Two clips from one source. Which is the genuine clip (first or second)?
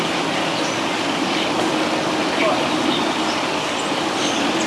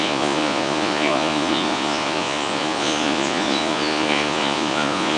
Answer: first